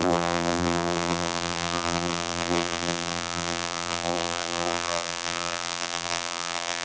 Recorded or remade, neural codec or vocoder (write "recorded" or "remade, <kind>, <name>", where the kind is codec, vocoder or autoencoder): remade, vocoder, BigVGAN v2